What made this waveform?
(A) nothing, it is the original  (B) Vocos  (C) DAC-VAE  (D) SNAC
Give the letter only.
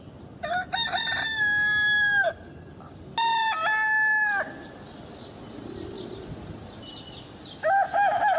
A